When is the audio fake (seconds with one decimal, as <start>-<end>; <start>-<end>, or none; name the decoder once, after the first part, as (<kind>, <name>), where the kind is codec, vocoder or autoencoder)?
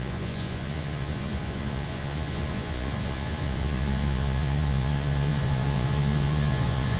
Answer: 0.0-7.0 (vocoder, Vocos)